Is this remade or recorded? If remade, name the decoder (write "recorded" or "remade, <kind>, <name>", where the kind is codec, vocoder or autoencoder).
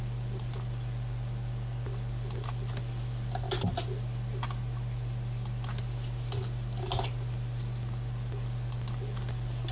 recorded